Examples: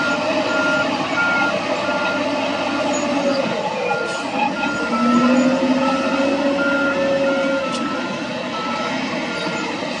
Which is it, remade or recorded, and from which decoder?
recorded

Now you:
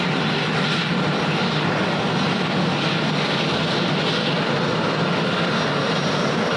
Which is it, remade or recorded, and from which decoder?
recorded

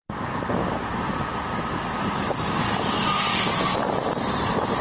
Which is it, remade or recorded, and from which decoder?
remade, vocoder, BigVGAN v2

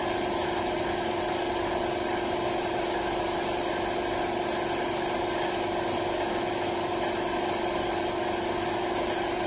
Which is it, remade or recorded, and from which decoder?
recorded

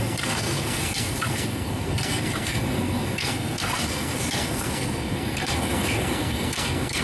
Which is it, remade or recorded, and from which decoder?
remade, codec, SNAC